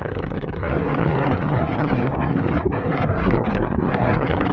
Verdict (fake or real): fake